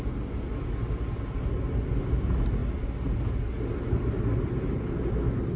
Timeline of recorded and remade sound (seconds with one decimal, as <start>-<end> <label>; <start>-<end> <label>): 0.0-5.6 recorded